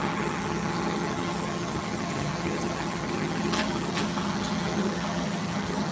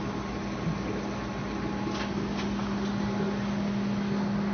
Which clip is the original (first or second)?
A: second